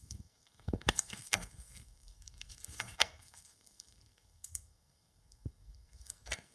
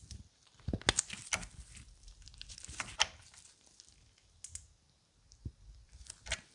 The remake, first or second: first